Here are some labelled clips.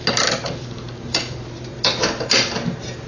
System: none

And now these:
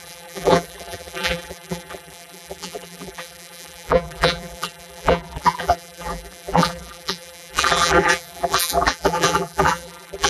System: vocoder, BigVGAN v2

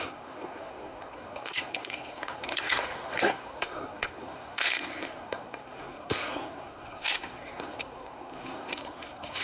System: codec, SNAC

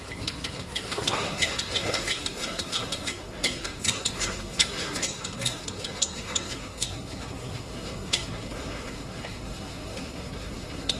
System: codec, SNAC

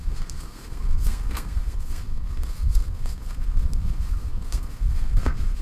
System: codec, SNAC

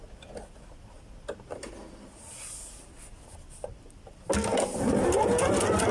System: none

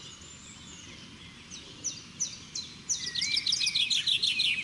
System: none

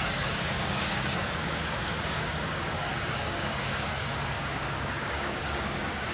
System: codec, DAC